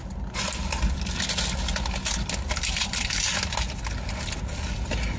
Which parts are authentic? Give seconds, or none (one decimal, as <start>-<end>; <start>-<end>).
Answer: 0.0-5.2